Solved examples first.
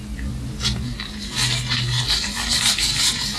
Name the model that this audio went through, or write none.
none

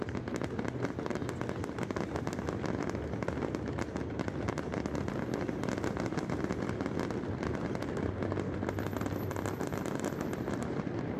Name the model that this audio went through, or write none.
none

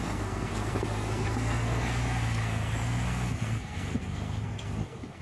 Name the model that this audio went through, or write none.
codec, SNAC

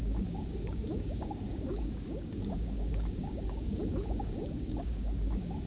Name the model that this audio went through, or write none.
codec, DAC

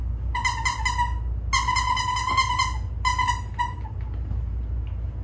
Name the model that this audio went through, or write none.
none